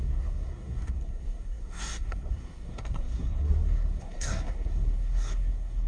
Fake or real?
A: fake